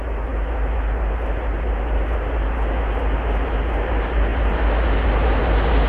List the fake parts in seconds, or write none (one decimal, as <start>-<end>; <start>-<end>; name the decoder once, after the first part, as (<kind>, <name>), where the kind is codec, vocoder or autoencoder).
none